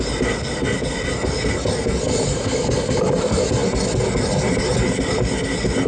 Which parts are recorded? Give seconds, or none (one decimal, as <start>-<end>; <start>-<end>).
0.0-5.9